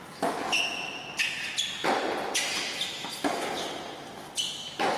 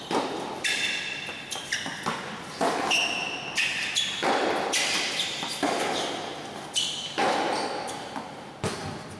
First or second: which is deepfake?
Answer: second